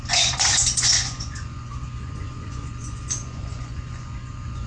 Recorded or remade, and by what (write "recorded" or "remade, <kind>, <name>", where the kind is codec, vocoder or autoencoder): remade, vocoder, Vocos